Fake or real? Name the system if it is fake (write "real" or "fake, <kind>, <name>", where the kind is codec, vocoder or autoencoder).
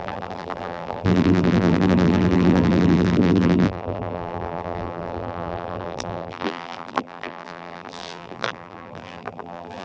fake, vocoder, BigVGAN v2